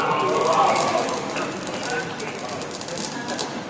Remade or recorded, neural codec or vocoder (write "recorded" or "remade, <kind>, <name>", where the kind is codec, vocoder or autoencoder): recorded